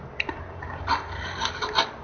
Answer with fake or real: real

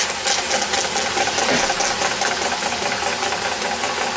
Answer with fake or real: real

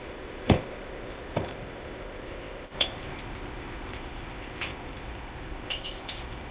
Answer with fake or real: fake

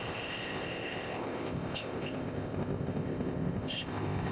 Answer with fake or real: fake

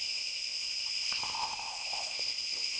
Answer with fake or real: fake